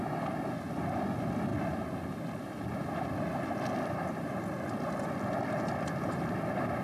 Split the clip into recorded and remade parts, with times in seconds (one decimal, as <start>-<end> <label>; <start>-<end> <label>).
0.0-6.8 recorded